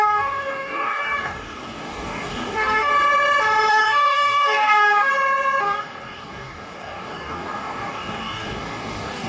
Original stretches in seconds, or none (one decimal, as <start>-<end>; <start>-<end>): 2.9-3.7; 5.1-5.6

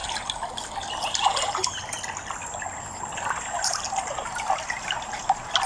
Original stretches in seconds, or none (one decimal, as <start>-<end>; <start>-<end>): 0.0-5.7

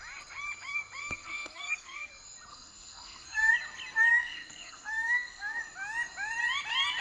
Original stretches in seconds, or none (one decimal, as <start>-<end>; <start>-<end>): 0.0-1.0; 2.1-2.5; 3.5-4.1; 5.6-7.0

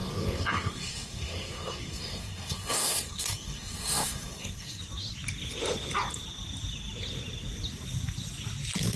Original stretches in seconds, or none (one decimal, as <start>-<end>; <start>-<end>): 4.8-9.0

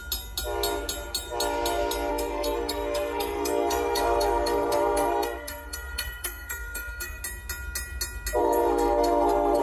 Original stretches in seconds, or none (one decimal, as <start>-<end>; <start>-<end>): 0.0-2.1; 7.2-8.4